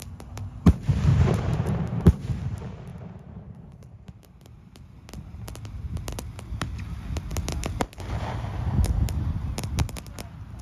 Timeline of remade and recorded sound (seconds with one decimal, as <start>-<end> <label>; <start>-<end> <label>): 0.0-1.1 recorded; 1.1-2.4 remade; 2.4-2.9 recorded; 2.9-4.8 remade; 4.8-10.6 recorded